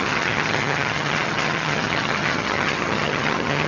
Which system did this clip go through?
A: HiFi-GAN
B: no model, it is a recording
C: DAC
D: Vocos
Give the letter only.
A